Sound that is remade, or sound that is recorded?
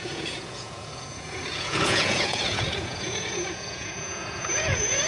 remade